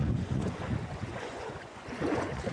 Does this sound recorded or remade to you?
remade